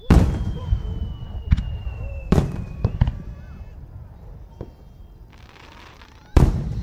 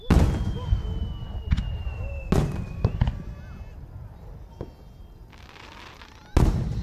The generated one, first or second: first